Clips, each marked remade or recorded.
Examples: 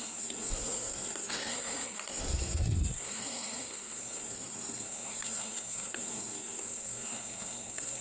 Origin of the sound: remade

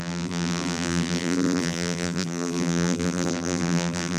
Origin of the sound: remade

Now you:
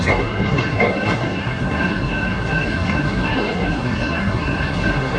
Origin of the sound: remade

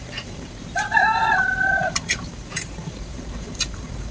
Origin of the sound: remade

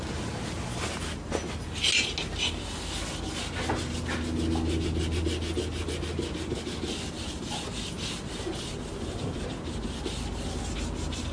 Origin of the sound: recorded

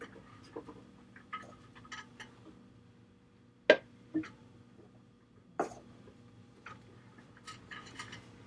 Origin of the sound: recorded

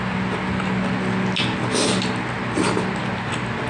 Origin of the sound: recorded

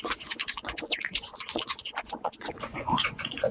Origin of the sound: remade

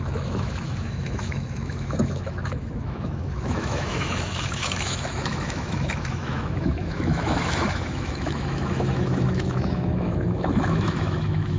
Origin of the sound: remade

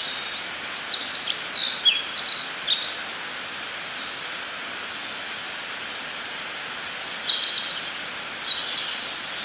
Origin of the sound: recorded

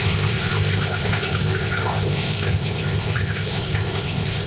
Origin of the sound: remade